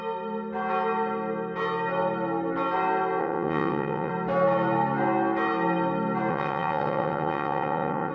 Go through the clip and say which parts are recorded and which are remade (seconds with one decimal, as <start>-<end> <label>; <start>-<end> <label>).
0.0-3.2 recorded; 3.2-4.1 remade; 4.1-6.3 recorded; 6.3-8.1 remade